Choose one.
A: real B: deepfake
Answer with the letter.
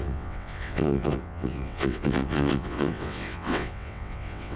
B